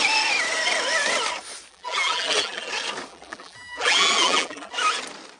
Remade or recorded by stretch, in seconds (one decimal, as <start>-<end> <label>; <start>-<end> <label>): 0.0-1.7 recorded; 1.7-2.7 remade; 2.7-3.1 recorded; 3.1-4.7 remade; 4.7-5.4 recorded